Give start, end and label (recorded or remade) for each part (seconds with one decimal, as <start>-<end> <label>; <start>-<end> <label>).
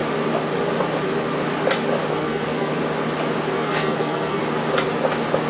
0.0-2.1 recorded; 2.1-2.7 remade; 2.7-3.5 recorded; 3.5-4.4 remade; 4.4-5.5 recorded